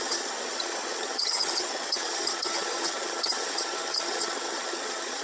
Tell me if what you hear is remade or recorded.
remade